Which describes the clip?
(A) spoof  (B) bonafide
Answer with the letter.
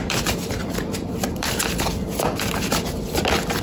A